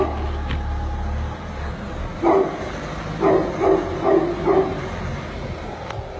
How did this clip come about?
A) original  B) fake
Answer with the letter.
A